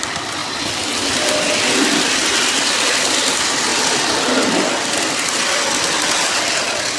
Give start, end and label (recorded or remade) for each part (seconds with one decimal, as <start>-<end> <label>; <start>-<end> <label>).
0.0-7.0 recorded